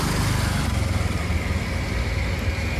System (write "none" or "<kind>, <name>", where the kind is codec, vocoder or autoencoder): none